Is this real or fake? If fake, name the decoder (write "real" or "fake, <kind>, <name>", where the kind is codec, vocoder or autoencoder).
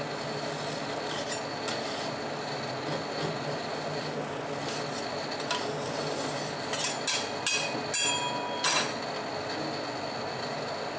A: real